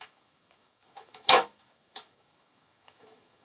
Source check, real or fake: fake